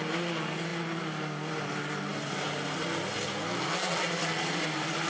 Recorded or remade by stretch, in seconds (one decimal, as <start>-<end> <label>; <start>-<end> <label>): 0.0-5.1 recorded